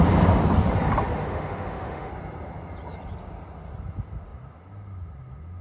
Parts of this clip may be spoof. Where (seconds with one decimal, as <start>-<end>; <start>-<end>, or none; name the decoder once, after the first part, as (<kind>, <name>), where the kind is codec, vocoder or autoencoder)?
1.2-2.1 (autoencoder, DAC-VAE)